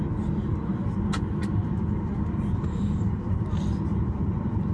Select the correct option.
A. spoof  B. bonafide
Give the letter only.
B